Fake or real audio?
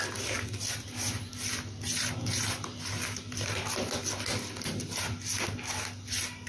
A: real